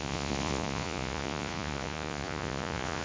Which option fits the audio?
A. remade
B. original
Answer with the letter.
A